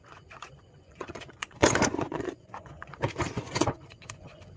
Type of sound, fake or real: fake